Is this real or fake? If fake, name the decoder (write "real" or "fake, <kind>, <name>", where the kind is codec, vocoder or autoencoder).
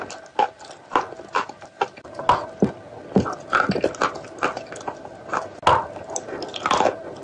real